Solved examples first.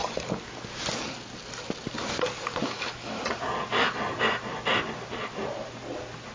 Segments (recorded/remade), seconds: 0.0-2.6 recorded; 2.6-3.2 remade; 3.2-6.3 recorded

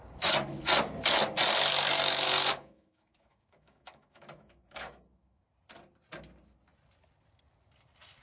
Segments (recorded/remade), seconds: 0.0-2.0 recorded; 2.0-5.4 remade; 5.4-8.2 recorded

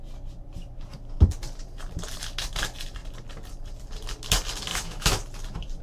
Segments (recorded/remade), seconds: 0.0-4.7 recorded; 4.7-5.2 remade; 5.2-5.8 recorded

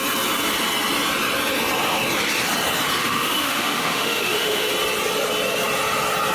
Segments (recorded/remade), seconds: 0.0-3.0 recorded; 3.0-4.7 remade; 4.7-6.3 recorded